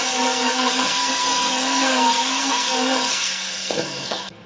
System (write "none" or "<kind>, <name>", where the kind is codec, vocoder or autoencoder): codec, SNAC